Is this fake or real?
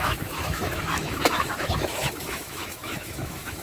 fake